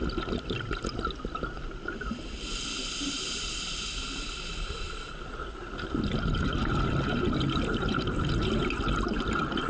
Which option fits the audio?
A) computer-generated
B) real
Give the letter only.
B